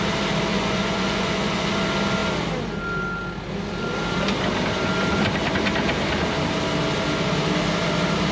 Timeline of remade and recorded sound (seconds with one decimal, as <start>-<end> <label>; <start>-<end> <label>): 0.0-0.5 recorded; 0.5-1.7 remade; 1.7-8.3 recorded